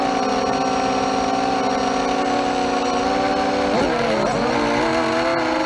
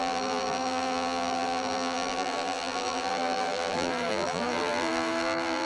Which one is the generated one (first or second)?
second